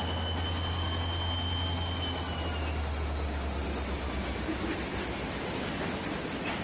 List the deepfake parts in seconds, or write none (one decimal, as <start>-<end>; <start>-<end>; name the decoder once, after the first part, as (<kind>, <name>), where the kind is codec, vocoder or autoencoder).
none